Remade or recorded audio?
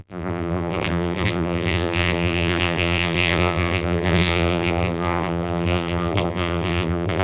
remade